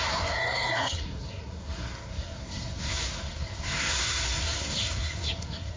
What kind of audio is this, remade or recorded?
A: remade